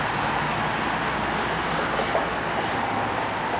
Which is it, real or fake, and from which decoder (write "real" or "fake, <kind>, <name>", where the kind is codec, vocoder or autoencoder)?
real